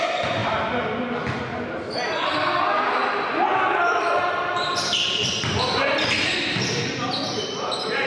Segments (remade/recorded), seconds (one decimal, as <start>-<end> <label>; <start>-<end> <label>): 0.0-3.5 recorded; 3.5-5.8 remade; 5.8-8.1 recorded